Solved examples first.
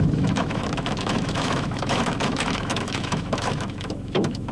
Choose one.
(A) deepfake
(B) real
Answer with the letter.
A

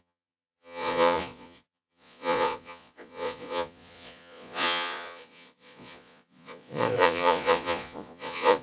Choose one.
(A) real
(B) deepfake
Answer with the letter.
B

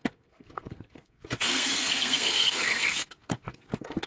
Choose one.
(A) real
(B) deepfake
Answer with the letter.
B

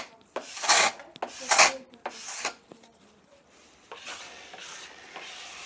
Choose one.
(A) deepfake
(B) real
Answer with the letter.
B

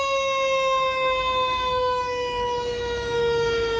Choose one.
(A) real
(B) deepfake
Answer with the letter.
B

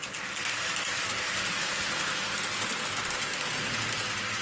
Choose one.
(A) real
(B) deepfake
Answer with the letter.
A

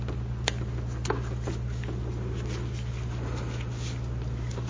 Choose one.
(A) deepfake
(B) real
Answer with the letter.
B